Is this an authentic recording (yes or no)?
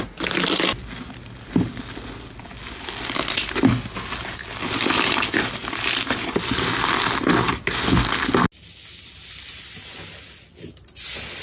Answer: yes